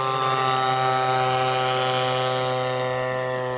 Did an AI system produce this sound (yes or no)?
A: no